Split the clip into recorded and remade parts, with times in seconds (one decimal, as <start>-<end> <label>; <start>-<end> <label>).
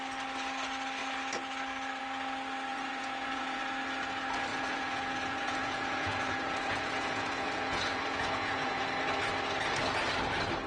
0.0-2.7 recorded; 2.7-3.6 remade; 3.6-4.5 recorded; 4.5-8.8 remade; 8.8-10.7 recorded